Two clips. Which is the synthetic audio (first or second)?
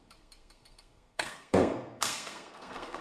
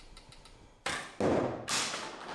first